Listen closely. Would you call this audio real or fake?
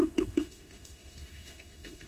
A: fake